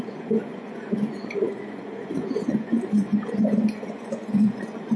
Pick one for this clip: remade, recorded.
remade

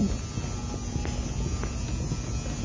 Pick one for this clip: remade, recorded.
recorded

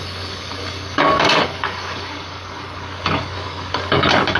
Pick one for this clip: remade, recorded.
remade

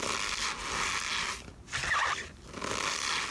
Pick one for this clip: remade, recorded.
recorded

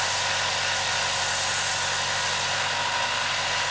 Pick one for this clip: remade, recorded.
recorded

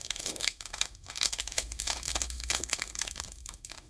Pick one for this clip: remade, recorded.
remade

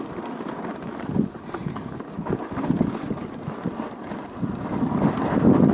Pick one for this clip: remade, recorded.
recorded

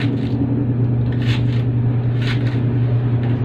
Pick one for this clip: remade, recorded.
recorded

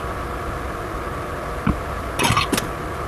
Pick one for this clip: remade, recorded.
recorded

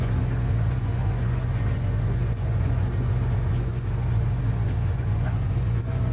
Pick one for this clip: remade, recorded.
remade